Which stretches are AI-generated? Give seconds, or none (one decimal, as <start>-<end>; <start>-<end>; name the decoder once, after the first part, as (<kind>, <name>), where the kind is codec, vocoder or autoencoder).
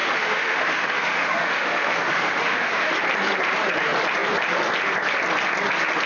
0.0-2.9 (autoencoder, DAC-VAE)